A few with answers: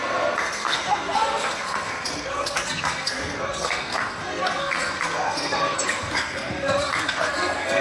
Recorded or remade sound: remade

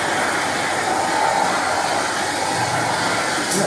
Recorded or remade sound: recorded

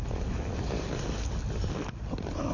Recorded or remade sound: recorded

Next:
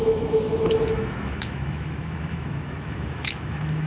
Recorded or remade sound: remade